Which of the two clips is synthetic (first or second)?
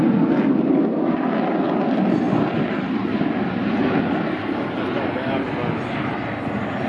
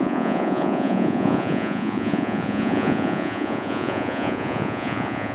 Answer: second